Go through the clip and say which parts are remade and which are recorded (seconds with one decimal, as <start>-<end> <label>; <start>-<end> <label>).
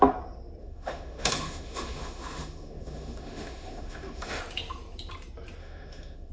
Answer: 0.0-0.6 recorded; 0.6-4.4 remade; 4.4-5.6 recorded; 5.6-6.3 remade